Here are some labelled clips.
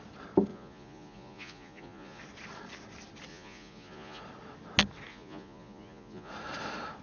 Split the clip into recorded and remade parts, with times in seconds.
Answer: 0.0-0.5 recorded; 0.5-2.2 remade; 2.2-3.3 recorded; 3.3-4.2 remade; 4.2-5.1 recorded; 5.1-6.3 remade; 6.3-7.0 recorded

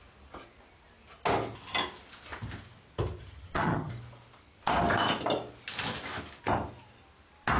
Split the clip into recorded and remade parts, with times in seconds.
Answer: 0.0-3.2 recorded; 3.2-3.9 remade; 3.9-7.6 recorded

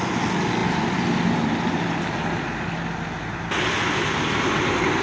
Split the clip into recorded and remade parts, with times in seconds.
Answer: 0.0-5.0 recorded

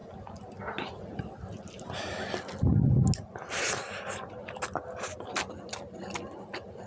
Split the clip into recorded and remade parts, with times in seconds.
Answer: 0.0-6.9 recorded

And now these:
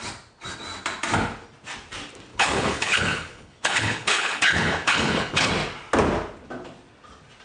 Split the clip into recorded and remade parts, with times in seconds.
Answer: 0.0-2.3 recorded; 2.3-5.5 remade; 5.5-7.4 recorded

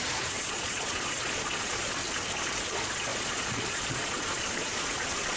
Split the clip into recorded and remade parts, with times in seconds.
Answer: 0.0-2.0 remade; 2.0-2.7 recorded; 2.7-5.4 remade

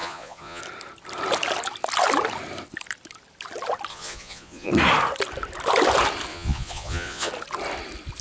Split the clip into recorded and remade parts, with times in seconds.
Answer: 0.0-0.6 remade; 0.6-3.9 recorded; 3.9-4.7 remade; 4.7-6.3 recorded; 6.3-7.3 remade; 7.3-8.2 recorded

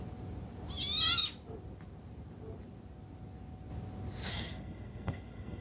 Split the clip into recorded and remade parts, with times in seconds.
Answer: 0.0-4.3 recorded; 4.3-5.6 remade